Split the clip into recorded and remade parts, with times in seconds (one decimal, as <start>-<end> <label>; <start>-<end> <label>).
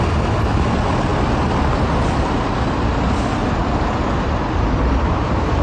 0.0-3.4 recorded; 3.4-5.6 remade